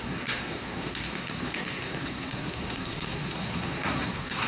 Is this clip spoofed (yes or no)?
yes